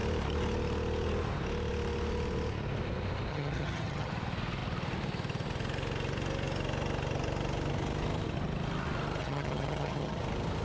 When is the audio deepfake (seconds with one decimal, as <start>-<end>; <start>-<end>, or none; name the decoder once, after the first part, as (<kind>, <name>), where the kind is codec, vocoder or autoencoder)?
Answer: 3.3-4.1 (vocoder, HiFi-GAN); 9.2-10.2